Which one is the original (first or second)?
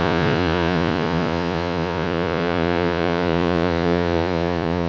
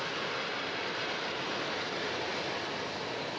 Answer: second